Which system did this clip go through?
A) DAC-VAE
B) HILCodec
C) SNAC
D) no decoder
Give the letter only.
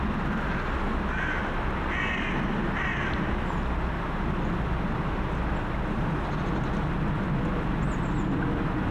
D